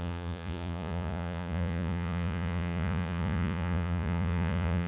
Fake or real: fake